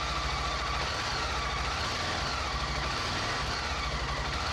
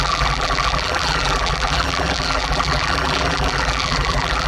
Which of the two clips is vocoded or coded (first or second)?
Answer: second